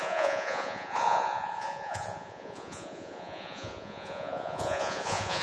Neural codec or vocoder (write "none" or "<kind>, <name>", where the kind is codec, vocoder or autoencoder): vocoder, Vocos